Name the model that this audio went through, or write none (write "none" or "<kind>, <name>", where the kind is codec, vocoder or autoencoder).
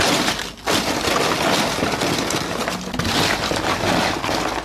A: none